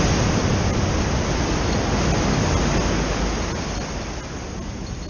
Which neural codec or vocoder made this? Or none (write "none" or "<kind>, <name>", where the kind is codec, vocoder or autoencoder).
none